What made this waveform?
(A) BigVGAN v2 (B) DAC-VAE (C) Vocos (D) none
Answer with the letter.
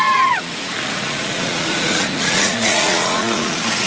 C